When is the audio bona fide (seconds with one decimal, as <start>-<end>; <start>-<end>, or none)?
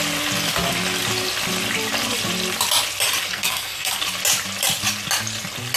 0.0-3.2; 4.0-5.8